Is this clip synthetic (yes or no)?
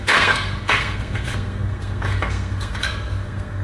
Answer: yes